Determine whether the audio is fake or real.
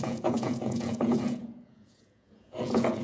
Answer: fake